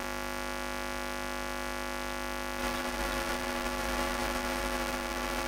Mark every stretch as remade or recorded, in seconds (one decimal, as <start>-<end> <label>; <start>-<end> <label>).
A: 0.0-2.6 recorded; 2.6-5.5 remade

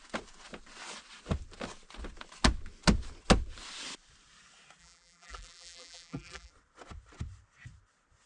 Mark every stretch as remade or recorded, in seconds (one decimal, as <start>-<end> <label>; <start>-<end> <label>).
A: 0.0-4.8 recorded; 4.8-6.5 remade; 6.5-8.3 recorded

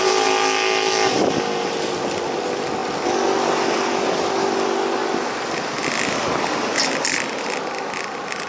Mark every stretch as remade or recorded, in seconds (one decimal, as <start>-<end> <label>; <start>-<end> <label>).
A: 0.0-8.5 recorded